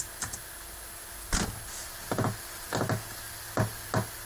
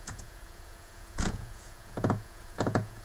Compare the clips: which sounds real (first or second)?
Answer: first